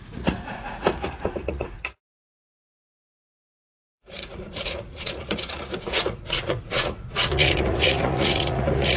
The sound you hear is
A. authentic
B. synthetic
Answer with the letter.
B